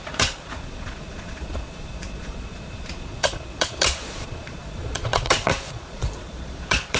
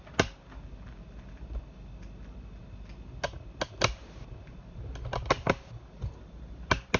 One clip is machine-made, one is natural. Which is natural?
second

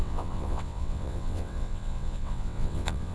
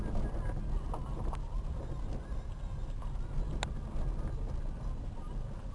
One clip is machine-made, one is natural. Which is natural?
second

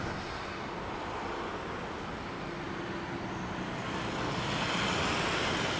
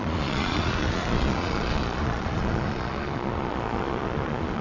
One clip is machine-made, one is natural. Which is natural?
first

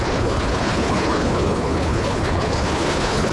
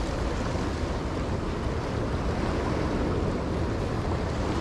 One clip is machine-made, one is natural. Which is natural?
second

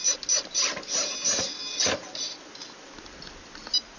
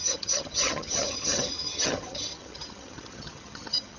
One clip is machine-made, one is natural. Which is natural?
first